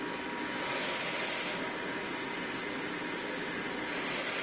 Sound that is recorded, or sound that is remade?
recorded